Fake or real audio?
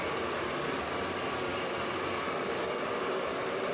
real